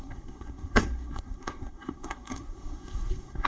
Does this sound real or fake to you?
fake